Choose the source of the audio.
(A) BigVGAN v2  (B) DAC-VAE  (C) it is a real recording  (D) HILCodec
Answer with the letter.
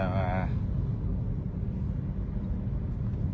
C